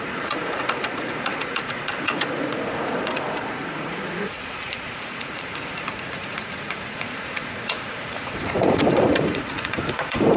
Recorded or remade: remade